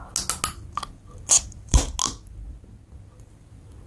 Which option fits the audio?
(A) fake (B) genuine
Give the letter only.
B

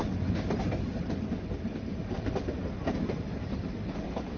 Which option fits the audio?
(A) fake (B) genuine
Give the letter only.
B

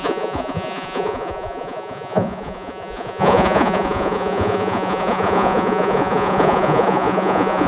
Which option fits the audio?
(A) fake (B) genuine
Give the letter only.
A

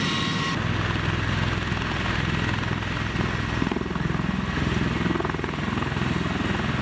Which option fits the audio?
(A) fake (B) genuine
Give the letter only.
B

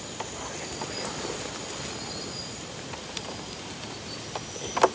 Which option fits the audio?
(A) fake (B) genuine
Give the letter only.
B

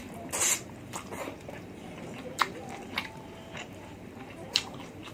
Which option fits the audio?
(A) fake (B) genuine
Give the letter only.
A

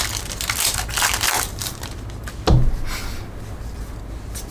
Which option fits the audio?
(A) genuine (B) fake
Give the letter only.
A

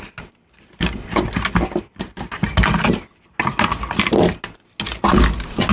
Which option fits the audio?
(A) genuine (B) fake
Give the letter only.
A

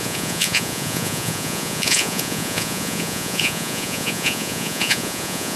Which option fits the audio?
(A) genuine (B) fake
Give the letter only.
B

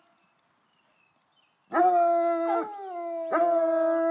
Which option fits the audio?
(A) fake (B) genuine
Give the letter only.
B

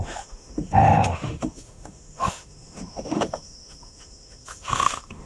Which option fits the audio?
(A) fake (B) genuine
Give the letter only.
A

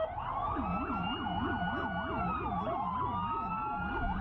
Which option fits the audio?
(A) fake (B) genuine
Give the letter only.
B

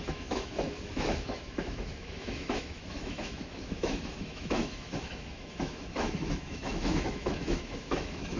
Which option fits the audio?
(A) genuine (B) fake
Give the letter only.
B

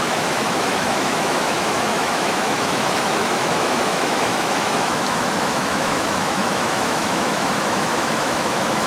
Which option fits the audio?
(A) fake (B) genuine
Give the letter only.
A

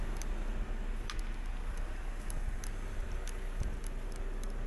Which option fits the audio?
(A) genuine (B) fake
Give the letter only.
A